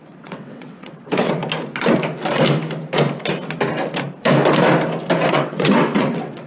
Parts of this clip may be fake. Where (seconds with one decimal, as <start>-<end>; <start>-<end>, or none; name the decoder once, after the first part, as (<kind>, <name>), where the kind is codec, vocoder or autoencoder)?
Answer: 0.0-1.4 (vocoder, WaveNeXt); 5.3-6.5